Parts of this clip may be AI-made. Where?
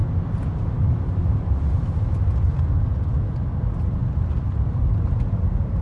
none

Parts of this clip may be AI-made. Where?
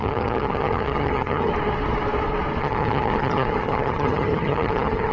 0.0-1.5 (vocoder, HiFi-GAN); 2.6-5.1